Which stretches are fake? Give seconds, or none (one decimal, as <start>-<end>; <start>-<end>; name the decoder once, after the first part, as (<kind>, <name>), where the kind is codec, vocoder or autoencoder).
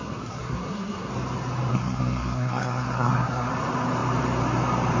0.0-1.1 (codec, SNAC); 1.7-3.5